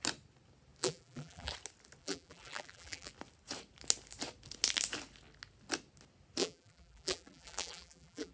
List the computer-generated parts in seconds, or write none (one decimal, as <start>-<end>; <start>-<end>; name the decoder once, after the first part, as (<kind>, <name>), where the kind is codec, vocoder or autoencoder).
0.8-1.5 (vocoder, BigVGAN v2); 2.0-3.1; 6.4-8.3